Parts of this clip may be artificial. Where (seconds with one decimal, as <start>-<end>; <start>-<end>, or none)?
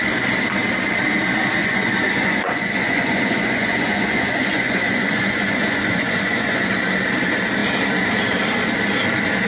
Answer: 1.6-6.7